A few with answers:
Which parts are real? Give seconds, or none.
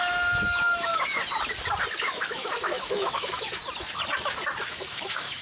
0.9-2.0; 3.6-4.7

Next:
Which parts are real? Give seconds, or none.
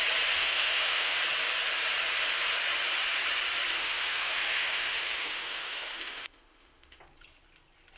0.0-0.4; 1.2-3.8; 7.0-8.0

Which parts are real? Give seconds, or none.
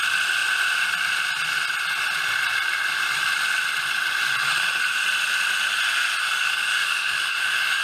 0.0-6.2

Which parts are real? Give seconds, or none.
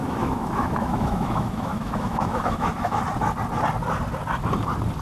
3.0-5.0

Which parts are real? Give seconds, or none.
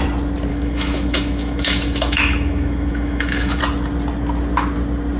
0.0-0.5; 3.6-5.2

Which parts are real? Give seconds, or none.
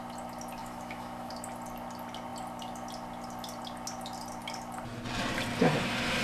0.0-0.6; 1.3-6.2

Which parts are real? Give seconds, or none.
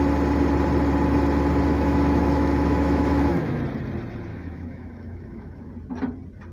0.0-1.7; 3.6-4.3; 5.7-6.5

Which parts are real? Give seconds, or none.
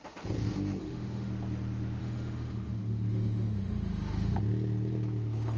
0.0-0.8; 1.3-2.0; 4.4-5.6